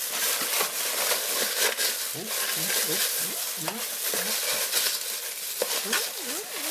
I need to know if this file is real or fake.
real